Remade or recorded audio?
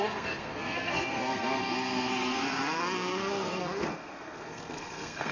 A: remade